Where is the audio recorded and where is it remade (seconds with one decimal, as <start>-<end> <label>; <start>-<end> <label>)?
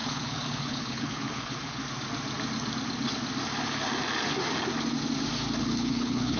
0.0-1.8 remade; 1.8-5.6 recorded; 5.6-6.4 remade